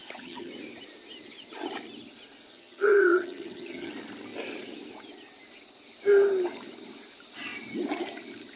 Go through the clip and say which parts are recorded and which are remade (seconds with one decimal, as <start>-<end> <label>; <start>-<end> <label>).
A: 0.0-0.5 remade; 0.5-2.5 recorded; 2.5-3.9 remade; 3.9-8.6 recorded